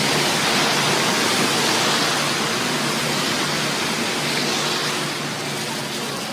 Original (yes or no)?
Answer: yes